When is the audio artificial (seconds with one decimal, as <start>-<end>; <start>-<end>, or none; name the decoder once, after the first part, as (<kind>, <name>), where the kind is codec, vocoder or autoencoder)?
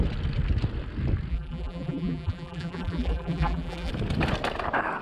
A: 1.3-3.9 (vocoder, BigVGAN v2)